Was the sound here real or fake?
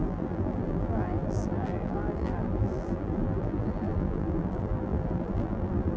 fake